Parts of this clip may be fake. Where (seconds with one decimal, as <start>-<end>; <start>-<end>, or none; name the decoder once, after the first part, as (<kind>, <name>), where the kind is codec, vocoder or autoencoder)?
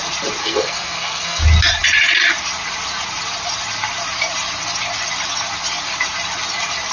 0.4-1.4 (codec, SNAC)